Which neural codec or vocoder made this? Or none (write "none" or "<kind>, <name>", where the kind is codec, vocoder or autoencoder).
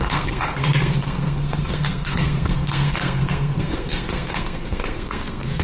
codec, SNAC